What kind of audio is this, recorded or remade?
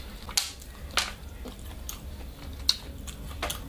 recorded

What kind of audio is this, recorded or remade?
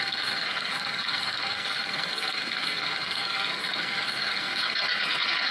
remade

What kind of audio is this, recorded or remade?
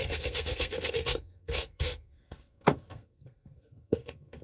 remade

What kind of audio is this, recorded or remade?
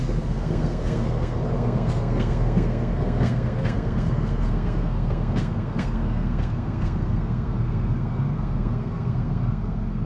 remade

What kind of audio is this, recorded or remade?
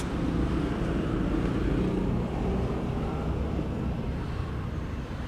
recorded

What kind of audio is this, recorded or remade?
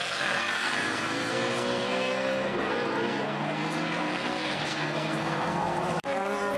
remade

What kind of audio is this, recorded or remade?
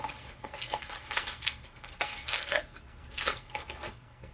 remade